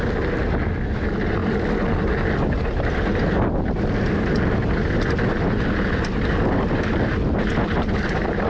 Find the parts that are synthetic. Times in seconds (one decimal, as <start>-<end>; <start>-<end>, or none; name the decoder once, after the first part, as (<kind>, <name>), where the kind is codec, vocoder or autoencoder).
none